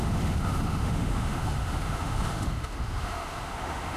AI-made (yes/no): yes